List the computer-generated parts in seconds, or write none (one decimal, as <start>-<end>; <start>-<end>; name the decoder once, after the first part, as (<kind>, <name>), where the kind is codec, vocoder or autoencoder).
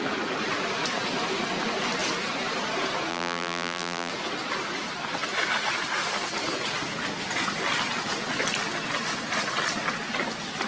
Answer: 3.1-4.1 (vocoder, BigVGAN v2)